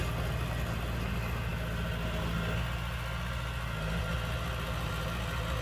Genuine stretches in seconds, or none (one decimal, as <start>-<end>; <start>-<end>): 0.0-5.6

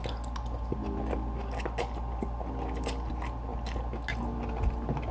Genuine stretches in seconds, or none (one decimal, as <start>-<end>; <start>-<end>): 0.0-5.1

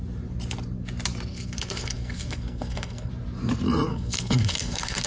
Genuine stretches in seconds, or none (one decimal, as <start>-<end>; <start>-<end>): 0.0-1.3; 3.1-3.9

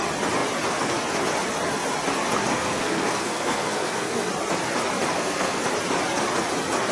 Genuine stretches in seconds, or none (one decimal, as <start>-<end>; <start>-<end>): 0.0-2.5; 4.3-5.1; 5.6-6.9

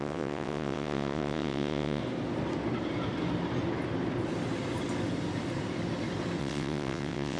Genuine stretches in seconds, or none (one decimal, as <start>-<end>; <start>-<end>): 2.0-6.4

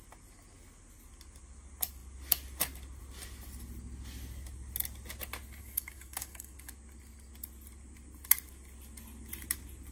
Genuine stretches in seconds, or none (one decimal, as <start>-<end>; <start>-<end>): 0.0-5.6; 6.7-9.9